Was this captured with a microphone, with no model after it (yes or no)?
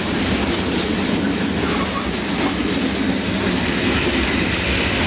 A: yes